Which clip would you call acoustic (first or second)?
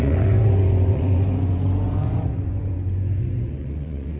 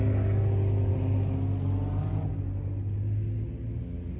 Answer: second